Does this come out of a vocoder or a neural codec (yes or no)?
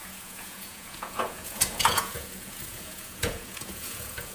yes